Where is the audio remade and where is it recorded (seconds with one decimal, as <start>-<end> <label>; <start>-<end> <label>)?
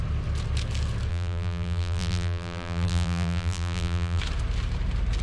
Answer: 0.0-1.1 recorded; 1.1-4.2 remade; 4.2-5.2 recorded